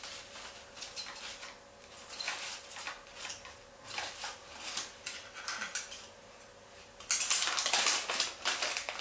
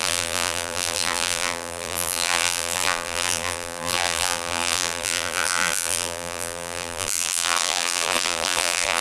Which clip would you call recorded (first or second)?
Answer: first